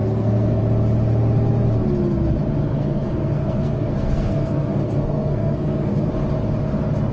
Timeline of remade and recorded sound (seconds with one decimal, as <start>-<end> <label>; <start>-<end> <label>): 0.0-0.6 remade; 0.6-2.7 recorded; 2.7-6.1 remade; 6.1-7.1 recorded